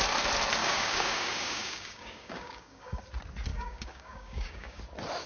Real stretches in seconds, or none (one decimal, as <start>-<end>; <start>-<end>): 0.0-0.6; 3.0-3.5; 4.8-5.3

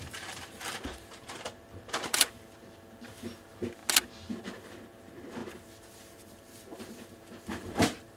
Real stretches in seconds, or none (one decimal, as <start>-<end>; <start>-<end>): 3.8-4.4

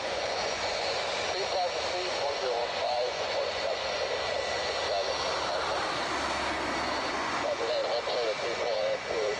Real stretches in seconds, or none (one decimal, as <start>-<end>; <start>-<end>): 1.0-2.1; 4.0-7.1; 7.8-8.4

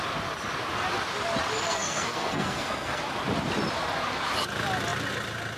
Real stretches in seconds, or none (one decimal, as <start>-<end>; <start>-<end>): 0.0-1.6; 3.0-5.6

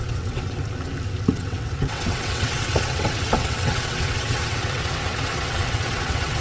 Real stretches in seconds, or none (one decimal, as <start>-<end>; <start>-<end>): 0.6-1.3

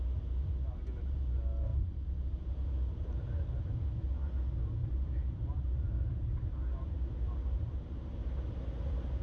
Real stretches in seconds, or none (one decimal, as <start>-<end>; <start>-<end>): 0.0-1.7; 3.8-4.8; 6.9-9.2